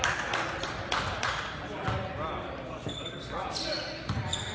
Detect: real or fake real